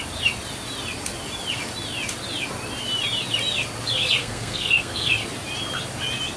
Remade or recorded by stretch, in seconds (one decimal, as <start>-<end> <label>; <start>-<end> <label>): 0.0-4.2 recorded; 4.2-5.1 remade; 5.1-6.4 recorded